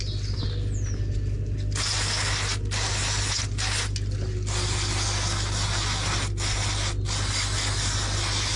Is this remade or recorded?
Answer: recorded